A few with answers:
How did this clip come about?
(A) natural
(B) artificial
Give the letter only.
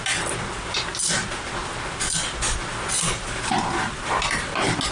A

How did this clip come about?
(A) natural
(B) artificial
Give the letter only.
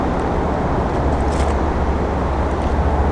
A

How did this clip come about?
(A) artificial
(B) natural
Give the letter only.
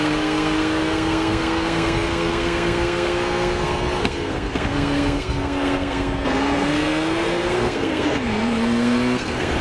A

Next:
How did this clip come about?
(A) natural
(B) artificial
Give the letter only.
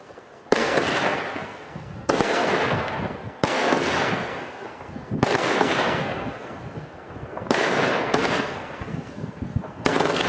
B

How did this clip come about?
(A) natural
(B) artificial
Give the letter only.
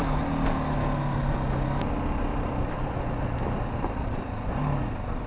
A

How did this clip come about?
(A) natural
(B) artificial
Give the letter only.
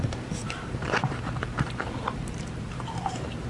B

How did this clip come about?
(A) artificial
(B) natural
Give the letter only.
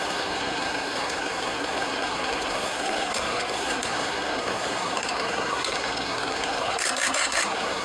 A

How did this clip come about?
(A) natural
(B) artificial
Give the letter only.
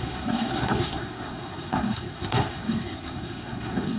B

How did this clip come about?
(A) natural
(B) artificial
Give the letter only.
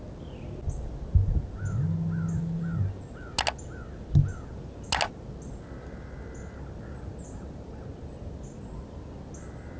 A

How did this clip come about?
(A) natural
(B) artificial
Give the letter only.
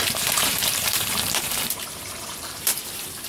B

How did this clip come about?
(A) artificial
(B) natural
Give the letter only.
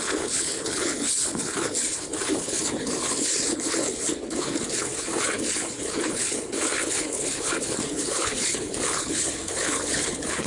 A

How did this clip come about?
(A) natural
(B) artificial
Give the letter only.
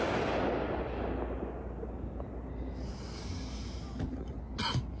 A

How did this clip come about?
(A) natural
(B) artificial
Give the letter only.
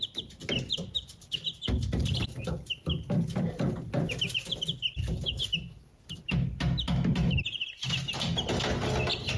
A